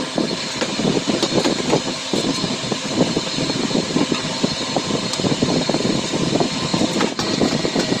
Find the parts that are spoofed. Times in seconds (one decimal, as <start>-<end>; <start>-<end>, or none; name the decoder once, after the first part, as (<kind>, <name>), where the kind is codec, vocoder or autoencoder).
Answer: none

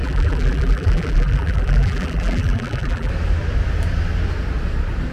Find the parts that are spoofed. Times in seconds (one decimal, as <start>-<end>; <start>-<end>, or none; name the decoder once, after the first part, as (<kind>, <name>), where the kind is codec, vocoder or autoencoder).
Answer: 0.0-3.1 (vocoder, BigVGAN v2)

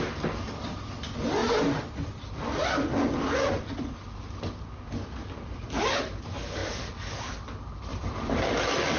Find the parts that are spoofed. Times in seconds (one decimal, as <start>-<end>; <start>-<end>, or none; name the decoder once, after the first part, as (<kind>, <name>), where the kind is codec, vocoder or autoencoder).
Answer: 7.9-8.5 (vocoder, BigVGAN v2)

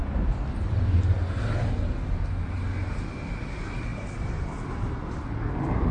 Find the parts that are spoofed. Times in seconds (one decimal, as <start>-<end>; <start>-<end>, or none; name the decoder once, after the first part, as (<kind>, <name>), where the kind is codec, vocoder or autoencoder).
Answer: 0.0-0.8 (vocoder, BigVGAN v2); 3.9-4.4